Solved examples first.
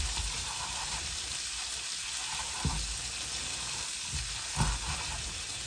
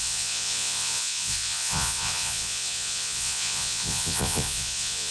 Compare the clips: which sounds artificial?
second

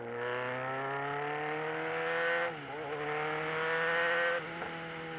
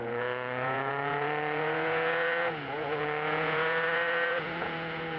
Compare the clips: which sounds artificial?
second